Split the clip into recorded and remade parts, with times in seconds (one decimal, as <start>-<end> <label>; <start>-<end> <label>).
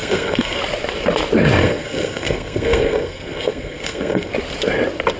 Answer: 0.0-0.6 remade; 0.6-1.6 recorded; 1.6-4.3 remade; 4.3-5.2 recorded